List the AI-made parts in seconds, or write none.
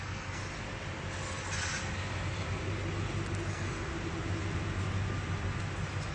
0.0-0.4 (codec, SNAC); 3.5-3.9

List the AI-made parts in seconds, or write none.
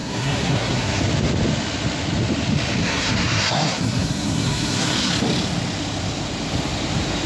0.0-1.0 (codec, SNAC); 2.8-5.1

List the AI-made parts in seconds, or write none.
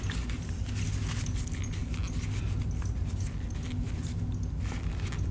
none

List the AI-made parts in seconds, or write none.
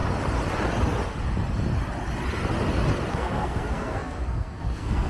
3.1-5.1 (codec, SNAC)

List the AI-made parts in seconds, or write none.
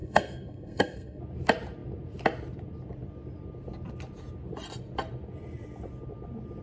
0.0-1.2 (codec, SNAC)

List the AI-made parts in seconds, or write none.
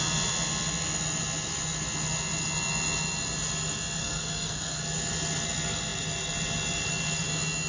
4.0-4.8 (codec, SNAC)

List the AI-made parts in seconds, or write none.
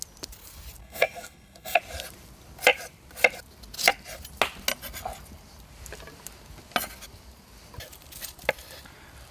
0.8-1.8 (codec, SNAC)